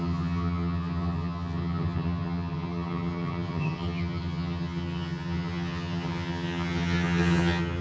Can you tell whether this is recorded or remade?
remade